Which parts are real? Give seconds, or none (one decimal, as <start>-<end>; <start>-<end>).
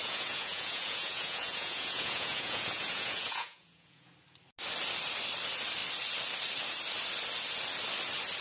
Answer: 4.1-8.4